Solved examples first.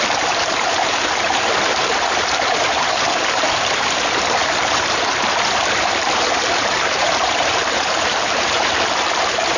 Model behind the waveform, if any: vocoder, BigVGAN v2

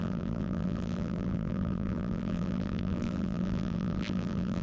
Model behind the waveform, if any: vocoder, BigVGAN v2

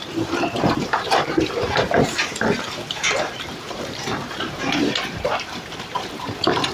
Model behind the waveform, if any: vocoder, BigVGAN v2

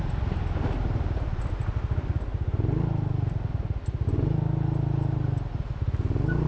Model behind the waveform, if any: none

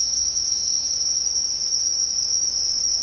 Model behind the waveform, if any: autoencoder, DAC-VAE